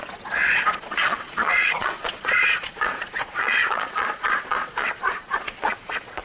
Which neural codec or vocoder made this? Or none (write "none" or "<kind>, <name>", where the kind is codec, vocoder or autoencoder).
vocoder, Vocos